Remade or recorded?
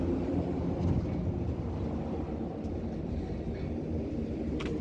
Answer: recorded